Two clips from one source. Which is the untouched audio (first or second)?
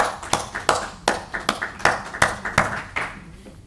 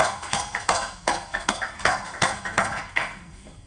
first